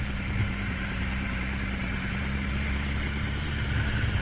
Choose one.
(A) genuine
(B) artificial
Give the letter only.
B